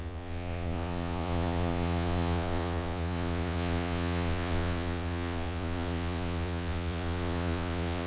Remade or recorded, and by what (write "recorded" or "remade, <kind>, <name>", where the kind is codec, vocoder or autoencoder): remade, vocoder, Vocos